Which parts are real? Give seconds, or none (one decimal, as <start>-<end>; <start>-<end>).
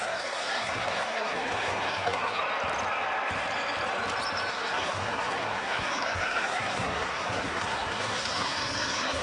2.4-4.5